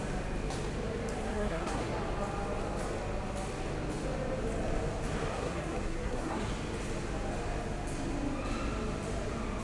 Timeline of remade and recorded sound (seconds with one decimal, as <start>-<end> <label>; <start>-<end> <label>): 0.0-1.2 recorded; 1.2-2.0 remade; 2.0-5.3 recorded; 5.3-6.5 remade; 6.5-9.6 recorded